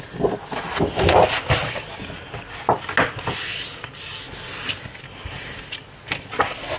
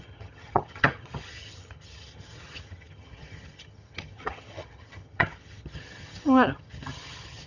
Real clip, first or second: first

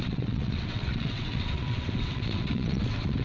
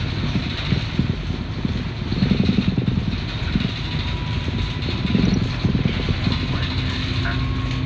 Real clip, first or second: second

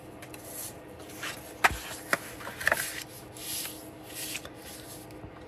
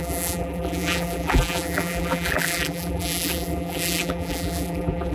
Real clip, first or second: first